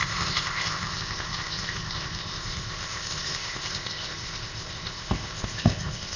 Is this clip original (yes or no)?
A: no